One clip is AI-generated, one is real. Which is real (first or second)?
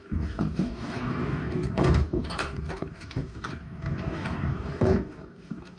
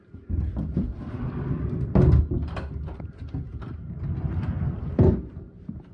second